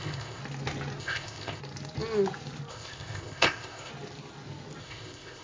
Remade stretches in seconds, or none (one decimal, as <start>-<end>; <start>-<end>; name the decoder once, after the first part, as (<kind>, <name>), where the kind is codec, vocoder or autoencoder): 0.0-0.4 (codec, ZipCodec); 1.0-1.6; 2.7-3.9; 4.8-5.4